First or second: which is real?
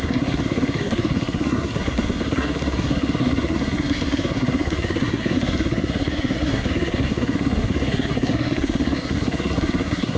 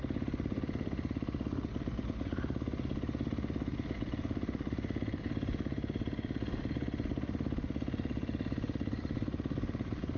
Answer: second